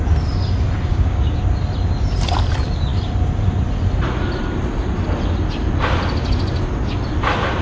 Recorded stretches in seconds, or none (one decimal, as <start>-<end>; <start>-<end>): 0.0-0.9; 1.4-7.6